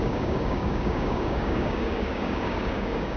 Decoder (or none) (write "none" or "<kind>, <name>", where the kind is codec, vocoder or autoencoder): codec, DAC